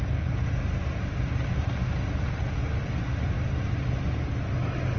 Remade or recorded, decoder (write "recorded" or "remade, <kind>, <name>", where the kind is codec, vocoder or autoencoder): recorded